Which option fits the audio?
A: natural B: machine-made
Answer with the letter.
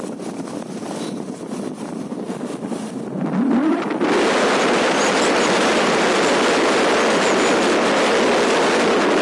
A